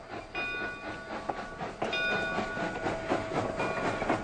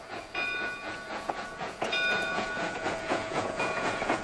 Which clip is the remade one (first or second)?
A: second